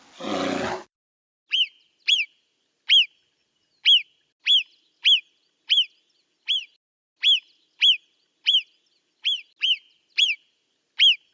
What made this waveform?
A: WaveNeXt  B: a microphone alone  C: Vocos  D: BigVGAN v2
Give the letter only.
B